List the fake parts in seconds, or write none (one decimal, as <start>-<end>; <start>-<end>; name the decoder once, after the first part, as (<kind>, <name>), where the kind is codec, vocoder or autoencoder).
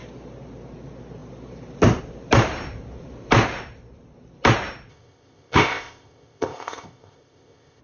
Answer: 4.9-7.8 (codec, ZipCodec)